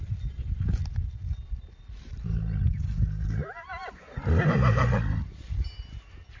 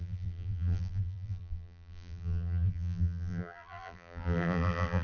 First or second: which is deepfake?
second